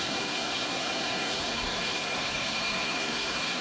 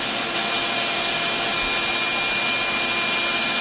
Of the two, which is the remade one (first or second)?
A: first